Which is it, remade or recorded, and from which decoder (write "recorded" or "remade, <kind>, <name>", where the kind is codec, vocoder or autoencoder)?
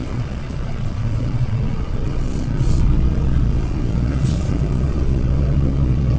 remade, vocoder, Vocos